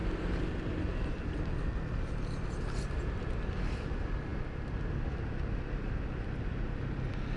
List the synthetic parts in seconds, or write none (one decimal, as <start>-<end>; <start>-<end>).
none